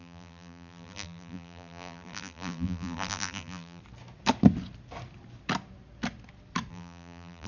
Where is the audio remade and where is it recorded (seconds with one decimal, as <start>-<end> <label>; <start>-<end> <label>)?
0.0-3.8 remade; 3.8-6.7 recorded; 6.7-7.5 remade